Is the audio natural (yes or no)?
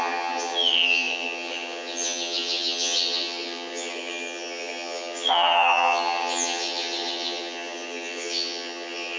no